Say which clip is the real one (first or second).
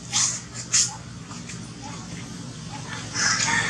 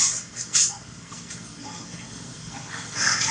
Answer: first